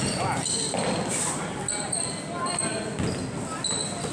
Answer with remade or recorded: recorded